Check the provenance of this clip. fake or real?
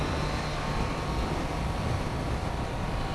real